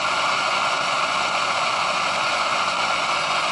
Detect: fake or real fake